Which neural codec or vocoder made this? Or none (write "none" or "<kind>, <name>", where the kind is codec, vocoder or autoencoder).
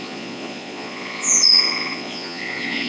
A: vocoder, Vocos